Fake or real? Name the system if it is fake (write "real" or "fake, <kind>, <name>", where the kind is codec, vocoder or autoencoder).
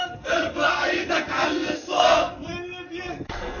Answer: fake, codec, SNAC